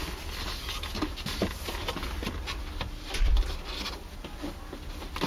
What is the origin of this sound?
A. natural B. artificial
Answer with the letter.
A